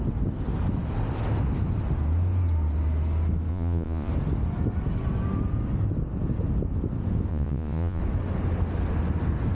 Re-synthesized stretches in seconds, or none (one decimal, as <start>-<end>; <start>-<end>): 3.5-4.1; 7.3-8.0